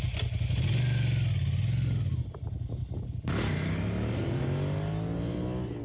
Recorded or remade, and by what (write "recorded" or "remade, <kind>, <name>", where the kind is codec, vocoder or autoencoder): recorded